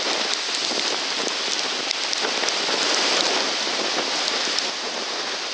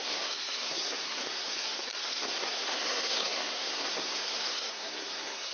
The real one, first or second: first